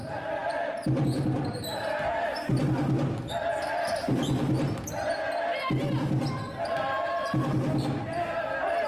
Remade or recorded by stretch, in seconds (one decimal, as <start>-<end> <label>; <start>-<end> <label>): 0.0-8.9 recorded